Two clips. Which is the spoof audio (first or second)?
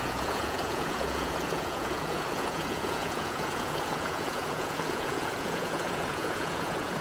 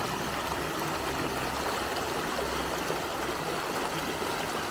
first